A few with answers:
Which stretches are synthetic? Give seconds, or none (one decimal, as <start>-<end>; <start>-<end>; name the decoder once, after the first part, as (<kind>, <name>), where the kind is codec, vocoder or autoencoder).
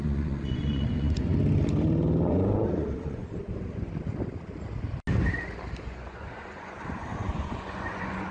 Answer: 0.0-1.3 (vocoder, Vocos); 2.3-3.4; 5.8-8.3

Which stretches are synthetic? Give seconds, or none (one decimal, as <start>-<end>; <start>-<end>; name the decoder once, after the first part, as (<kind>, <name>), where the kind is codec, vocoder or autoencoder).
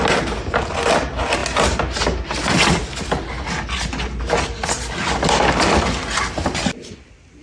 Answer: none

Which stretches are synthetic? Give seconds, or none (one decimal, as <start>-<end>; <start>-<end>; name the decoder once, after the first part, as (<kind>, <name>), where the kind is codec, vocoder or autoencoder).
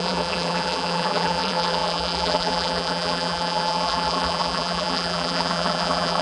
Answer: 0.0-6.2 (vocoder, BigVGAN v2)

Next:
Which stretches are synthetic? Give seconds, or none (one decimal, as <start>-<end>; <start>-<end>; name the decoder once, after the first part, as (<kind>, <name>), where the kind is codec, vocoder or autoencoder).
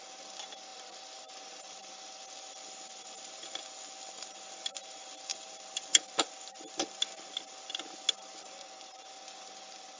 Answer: none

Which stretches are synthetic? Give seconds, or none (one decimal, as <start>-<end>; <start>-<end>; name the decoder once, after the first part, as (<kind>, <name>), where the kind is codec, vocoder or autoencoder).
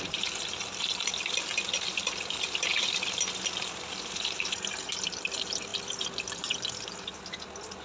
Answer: none